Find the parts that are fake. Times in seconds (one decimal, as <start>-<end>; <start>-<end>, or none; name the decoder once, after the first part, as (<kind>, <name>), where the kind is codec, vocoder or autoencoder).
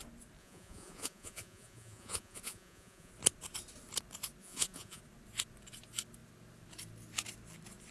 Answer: 0.4-3.1 (vocoder, Vocos); 4.4-5.0